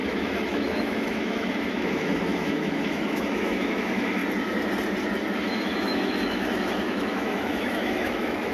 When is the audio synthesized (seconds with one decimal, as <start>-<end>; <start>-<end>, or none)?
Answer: 0.0-4.2; 5.4-8.5